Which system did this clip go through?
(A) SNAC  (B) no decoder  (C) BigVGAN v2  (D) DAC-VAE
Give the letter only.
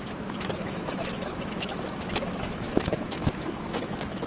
D